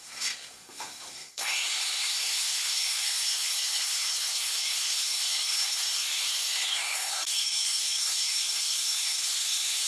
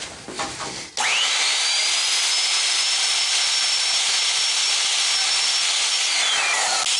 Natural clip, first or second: second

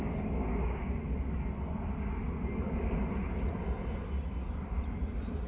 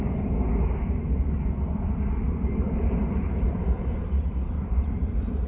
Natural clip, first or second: first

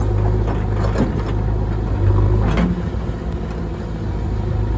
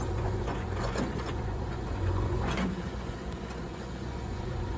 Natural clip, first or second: first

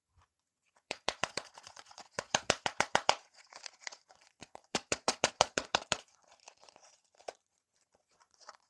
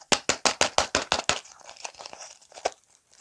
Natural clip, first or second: second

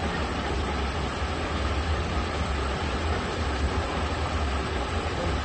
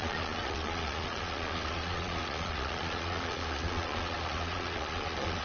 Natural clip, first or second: first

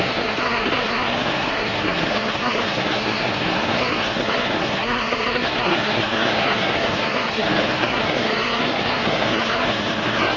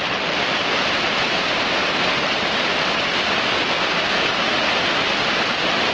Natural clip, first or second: second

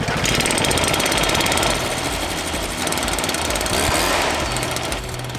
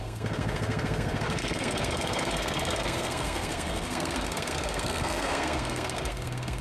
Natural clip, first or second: first